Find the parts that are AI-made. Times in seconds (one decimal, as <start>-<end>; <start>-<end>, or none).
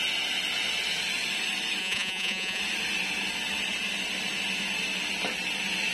1.8-2.6